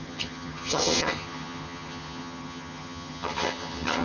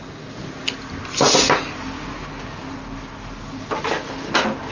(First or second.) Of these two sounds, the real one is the second